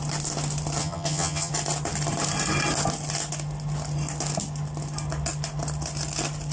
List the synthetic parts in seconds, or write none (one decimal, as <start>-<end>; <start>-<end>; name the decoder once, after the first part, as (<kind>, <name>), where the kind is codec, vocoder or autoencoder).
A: 0.8-1.5 (vocoder, HiFi-GAN)